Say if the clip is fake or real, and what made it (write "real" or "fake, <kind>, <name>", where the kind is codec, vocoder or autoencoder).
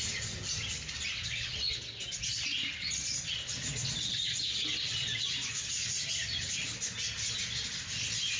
real